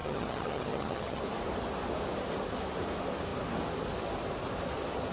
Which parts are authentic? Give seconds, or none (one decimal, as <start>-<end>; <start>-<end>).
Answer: 1.2-5.1